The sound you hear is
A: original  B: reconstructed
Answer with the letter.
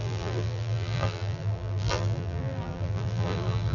B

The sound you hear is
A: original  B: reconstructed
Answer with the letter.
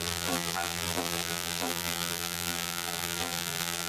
B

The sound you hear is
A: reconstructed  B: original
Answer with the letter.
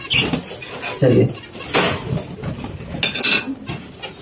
B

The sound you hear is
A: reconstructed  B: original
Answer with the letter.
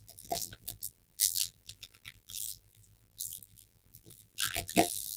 A